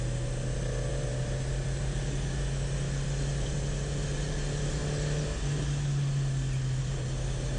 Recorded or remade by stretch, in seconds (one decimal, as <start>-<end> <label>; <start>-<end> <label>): 0.0-0.9 recorded; 0.9-2.1 remade; 2.1-7.6 recorded